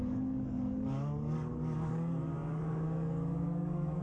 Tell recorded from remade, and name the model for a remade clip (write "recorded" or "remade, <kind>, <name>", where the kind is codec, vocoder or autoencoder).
remade, codec, DAC